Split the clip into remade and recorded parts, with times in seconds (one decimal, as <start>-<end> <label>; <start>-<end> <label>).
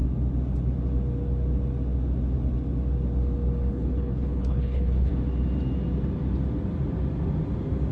0.0-3.7 recorded; 3.7-5.1 remade; 5.1-7.9 recorded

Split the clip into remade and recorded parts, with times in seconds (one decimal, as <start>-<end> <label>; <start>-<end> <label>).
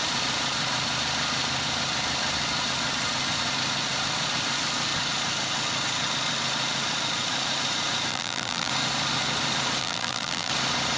0.0-8.1 recorded; 8.1-8.7 remade; 8.7-9.8 recorded; 9.8-10.5 remade; 10.5-11.0 recorded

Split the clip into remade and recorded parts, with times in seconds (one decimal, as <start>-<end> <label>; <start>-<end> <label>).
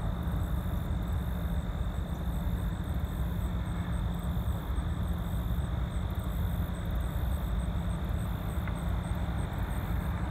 0.0-10.3 recorded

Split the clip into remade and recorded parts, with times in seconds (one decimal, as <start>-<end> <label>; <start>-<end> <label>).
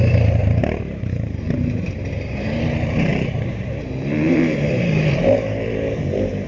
0.0-0.4 recorded; 0.4-2.1 remade; 2.1-3.1 recorded; 3.1-6.5 remade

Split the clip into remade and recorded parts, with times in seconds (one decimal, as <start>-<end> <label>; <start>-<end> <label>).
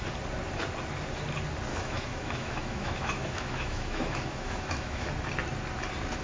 0.0-1.7 recorded; 1.7-5.1 remade; 5.1-6.2 recorded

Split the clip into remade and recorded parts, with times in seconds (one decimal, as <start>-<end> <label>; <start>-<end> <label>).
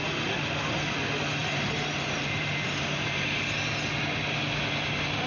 0.0-1.4 recorded; 1.4-3.4 remade; 3.4-5.3 recorded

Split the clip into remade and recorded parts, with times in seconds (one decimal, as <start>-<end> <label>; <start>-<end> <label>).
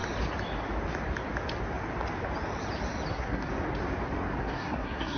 0.0-3.1 recorded; 3.1-3.5 remade; 3.5-4.4 recorded; 4.4-5.2 remade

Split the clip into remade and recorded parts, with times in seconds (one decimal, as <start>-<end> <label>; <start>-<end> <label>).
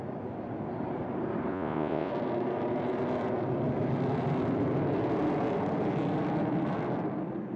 0.0-1.5 recorded; 1.5-2.1 remade; 2.1-7.6 recorded